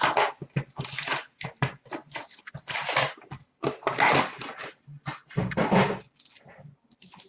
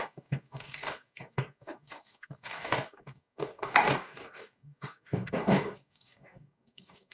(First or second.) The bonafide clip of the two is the first